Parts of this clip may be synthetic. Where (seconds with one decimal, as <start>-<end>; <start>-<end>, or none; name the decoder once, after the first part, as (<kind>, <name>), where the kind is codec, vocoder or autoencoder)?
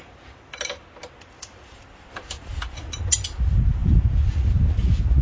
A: 1.7-2.8 (vocoder, BigVGAN v2)